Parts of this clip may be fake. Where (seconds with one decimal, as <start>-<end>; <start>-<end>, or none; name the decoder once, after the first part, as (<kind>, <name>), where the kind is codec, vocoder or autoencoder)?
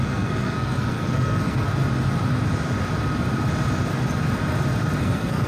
0.0-1.7 (codec, SNAC); 5.0-5.5